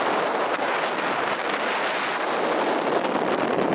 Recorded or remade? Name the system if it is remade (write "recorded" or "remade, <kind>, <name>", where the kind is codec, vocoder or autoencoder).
recorded